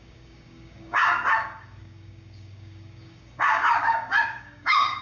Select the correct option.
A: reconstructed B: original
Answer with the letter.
A